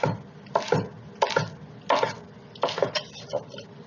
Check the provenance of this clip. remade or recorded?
recorded